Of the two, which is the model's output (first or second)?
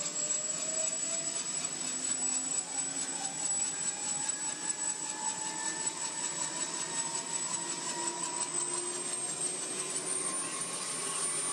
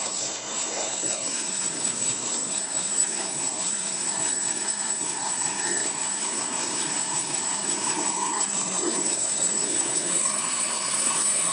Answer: second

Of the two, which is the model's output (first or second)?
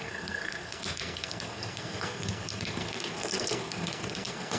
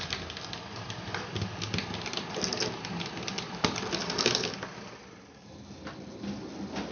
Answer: first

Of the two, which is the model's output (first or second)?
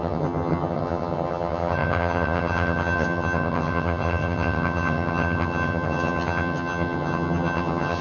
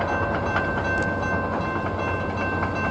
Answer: first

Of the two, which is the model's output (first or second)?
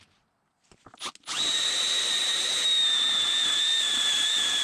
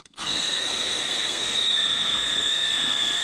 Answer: second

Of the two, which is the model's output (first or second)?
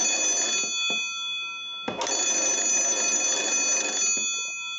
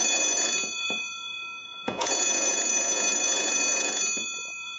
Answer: second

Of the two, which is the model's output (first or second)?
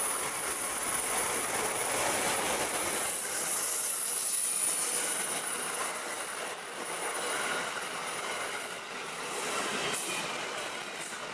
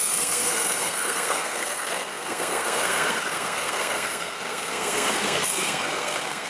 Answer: second